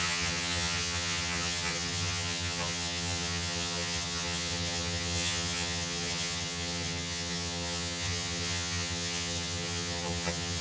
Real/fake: fake